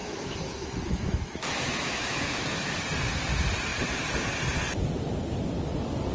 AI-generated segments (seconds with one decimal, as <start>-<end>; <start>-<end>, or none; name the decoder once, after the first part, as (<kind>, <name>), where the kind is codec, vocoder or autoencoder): 0.0-2.8 (autoencoder, DAC-VAE)